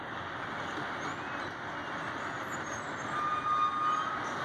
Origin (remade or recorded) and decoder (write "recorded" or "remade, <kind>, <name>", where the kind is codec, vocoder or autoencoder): recorded